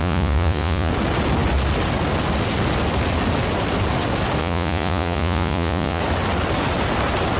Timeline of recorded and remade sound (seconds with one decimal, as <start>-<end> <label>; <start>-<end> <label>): 0.0-0.9 remade; 0.9-4.4 recorded; 4.4-6.0 remade; 6.0-7.4 recorded